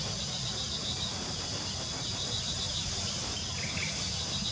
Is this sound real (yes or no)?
yes